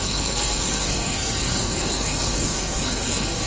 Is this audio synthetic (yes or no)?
yes